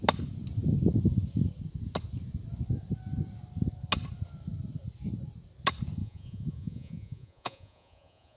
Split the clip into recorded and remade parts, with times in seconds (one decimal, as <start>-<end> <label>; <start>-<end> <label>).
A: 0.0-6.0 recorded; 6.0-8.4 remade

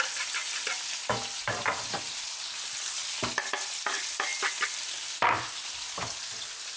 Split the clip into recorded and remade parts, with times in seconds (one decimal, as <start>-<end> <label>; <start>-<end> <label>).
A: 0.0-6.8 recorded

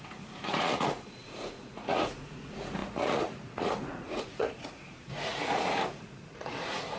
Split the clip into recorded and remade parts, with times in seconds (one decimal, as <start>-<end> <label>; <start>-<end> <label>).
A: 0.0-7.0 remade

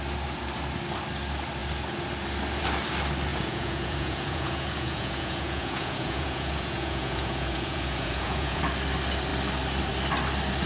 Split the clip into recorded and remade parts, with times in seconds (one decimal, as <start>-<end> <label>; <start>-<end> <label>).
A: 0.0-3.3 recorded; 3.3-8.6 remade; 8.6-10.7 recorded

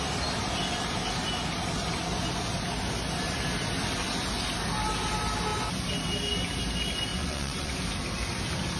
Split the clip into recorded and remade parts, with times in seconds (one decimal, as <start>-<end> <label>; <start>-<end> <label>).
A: 0.0-7.1 recorded; 7.1-7.7 remade; 7.7-8.8 recorded

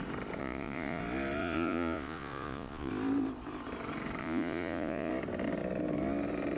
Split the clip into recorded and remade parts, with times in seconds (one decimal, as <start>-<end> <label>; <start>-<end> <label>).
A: 0.0-0.4 recorded; 0.4-1.0 remade; 1.0-1.4 recorded; 1.4-2.9 remade; 2.9-4.2 recorded; 4.2-5.1 remade; 5.1-6.6 recorded

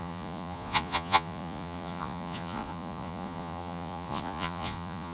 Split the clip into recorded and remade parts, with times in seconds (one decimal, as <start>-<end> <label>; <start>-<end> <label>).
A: 0.0-5.1 remade